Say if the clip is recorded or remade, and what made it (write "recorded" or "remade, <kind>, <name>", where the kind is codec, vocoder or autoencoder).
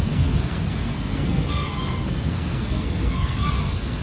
remade, codec, SNAC